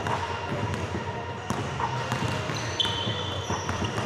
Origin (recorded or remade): remade